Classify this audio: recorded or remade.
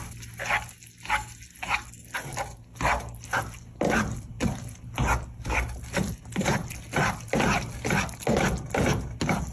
recorded